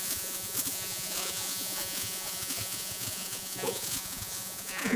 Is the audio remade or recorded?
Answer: remade